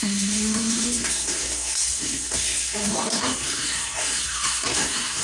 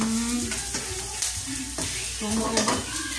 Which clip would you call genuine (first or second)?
second